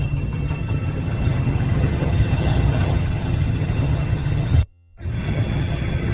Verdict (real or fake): fake